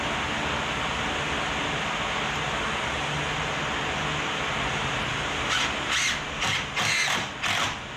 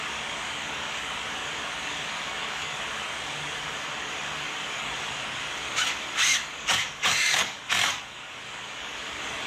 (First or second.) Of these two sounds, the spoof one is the second